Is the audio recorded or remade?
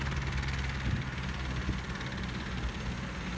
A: recorded